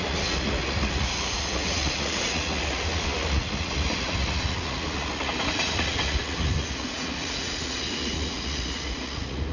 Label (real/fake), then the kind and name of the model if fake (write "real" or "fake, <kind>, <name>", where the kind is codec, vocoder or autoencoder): fake, vocoder, Vocos